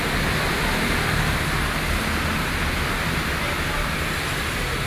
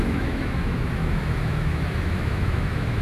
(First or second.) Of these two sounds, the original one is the first